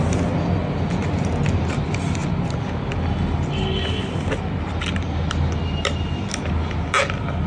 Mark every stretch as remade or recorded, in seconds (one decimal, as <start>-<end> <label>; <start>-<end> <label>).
0.0-7.5 recorded

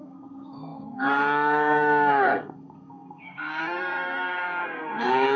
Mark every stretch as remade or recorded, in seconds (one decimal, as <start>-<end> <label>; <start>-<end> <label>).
0.0-5.4 remade

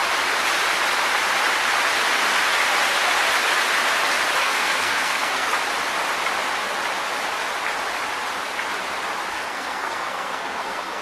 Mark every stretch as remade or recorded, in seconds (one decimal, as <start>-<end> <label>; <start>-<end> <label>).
0.0-4.4 recorded; 4.4-5.5 remade; 5.5-9.3 recorded; 9.3-11.0 remade

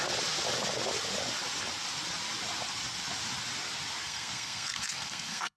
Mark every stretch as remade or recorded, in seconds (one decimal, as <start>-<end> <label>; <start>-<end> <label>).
0.0-4.0 recorded; 4.0-5.6 remade